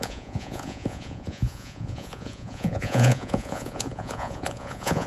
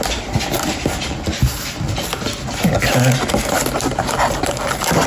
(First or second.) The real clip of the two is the second